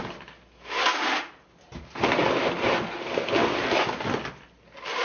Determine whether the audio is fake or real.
real